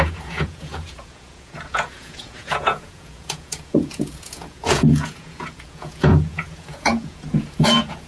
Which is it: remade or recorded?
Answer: remade